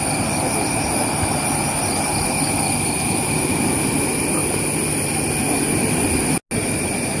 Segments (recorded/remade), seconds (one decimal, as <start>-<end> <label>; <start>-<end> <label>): 0.0-7.2 recorded